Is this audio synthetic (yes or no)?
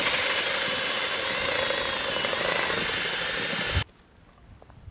no